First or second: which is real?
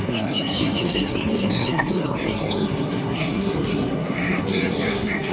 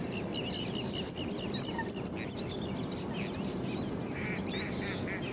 second